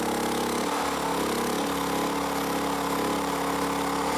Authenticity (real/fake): real